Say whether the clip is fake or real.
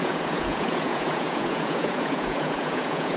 fake